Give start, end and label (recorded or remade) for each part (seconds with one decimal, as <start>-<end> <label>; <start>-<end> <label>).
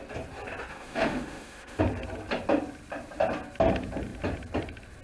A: 0.0-0.7 recorded; 0.7-1.8 remade; 1.8-5.0 recorded